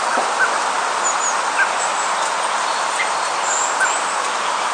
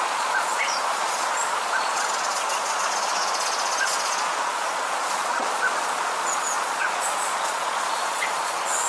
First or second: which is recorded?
first